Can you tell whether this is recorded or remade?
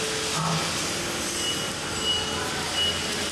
recorded